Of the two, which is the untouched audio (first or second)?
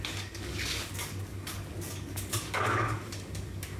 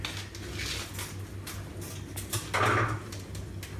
second